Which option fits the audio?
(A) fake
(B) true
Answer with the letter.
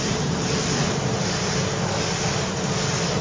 B